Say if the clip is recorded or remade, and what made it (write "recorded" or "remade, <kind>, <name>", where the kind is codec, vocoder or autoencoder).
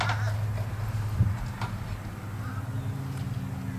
recorded